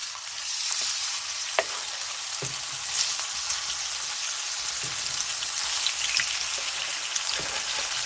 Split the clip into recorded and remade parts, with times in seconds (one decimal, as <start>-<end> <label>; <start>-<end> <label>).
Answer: 0.0-1.8 remade; 1.8-8.1 recorded